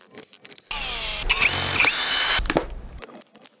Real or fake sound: real